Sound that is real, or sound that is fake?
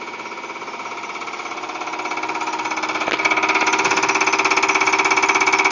real